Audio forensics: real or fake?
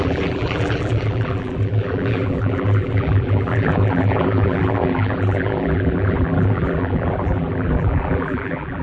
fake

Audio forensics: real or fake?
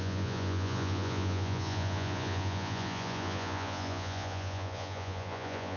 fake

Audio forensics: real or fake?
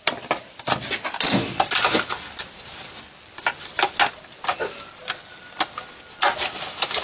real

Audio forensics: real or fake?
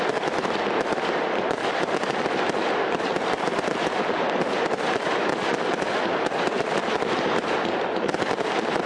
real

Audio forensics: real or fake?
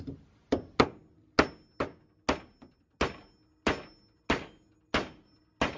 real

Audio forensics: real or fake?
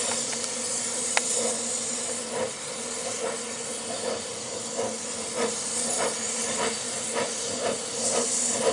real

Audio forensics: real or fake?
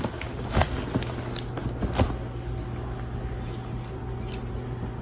real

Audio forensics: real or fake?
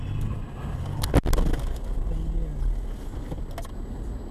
real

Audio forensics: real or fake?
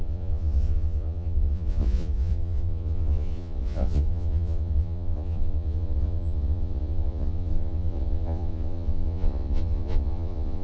fake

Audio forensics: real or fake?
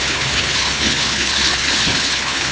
fake